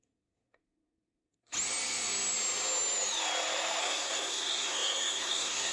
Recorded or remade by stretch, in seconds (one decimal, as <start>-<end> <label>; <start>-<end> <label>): 0.0-1.5 remade; 1.5-3.8 recorded; 3.8-5.7 remade